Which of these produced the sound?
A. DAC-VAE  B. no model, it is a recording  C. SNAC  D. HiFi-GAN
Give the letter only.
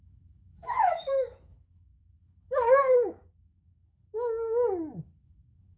A